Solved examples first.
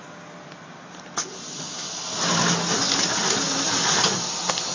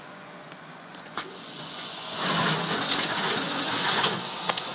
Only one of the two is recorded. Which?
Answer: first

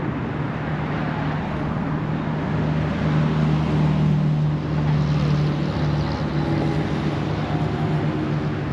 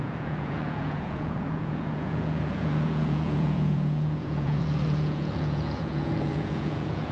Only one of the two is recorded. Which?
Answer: first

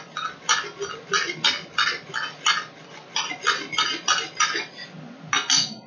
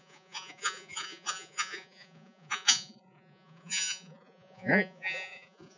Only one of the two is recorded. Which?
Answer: first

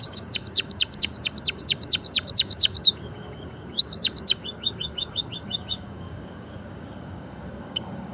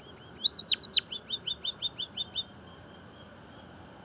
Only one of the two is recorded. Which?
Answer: second